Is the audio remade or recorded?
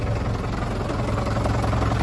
recorded